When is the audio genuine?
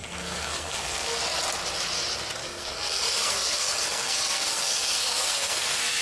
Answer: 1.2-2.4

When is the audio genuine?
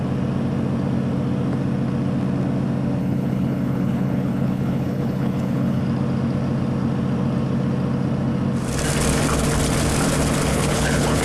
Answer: 0.0-3.0; 5.8-10.5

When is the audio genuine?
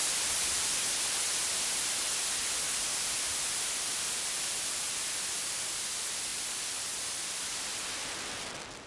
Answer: 0.0-8.9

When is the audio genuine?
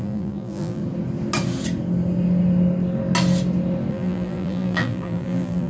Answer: 0.8-3.9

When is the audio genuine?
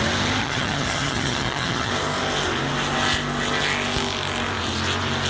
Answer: 0.0-0.4; 1.9-5.3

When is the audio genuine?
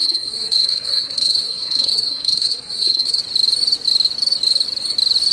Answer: 3.2-5.3